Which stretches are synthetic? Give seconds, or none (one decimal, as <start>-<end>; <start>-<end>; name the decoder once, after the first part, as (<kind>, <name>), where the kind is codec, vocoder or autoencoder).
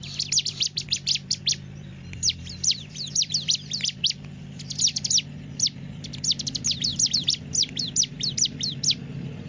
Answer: none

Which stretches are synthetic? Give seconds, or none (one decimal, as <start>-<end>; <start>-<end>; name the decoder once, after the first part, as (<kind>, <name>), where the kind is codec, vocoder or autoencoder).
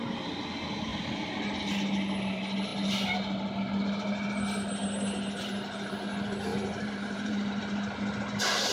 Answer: 6.5-7.6 (vocoder, BigVGAN v2)